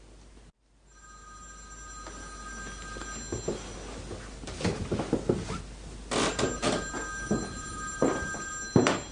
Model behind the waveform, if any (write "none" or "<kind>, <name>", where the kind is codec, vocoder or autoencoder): none